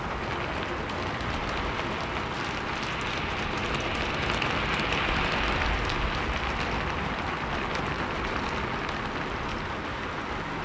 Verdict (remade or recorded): recorded